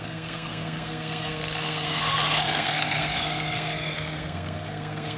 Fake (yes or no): yes